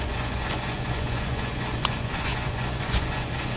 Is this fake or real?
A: fake